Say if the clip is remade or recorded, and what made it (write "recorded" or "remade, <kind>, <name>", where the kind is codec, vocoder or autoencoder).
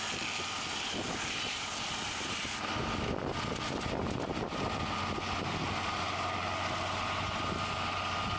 recorded